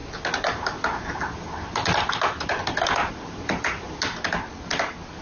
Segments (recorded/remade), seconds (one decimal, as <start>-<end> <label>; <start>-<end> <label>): 0.0-5.2 recorded